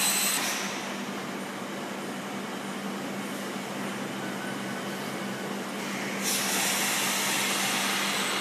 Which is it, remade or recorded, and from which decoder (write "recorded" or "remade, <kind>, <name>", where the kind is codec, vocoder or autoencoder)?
recorded